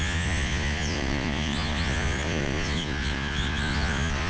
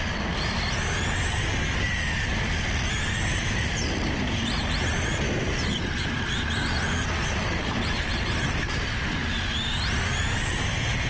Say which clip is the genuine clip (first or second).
second